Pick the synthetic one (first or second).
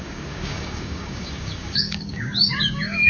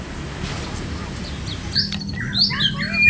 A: first